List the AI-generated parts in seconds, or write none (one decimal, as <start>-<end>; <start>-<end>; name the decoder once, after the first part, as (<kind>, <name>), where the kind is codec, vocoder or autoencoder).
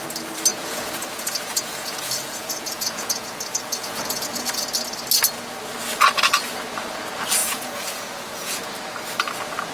0.5-4.6 (vocoder, Vocos); 7.4-8.5